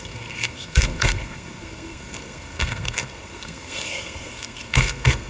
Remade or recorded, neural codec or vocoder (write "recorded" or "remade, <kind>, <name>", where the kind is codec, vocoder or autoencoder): remade, codec, SNAC